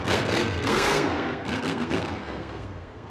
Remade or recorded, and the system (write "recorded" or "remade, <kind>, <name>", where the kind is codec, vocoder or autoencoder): remade, codec, SNAC